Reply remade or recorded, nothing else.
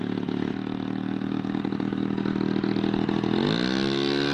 recorded